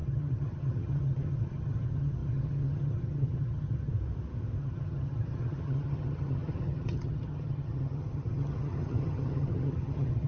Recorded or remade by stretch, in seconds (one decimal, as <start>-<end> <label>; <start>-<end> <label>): 0.0-3.9 remade; 3.9-4.6 recorded; 4.6-10.3 remade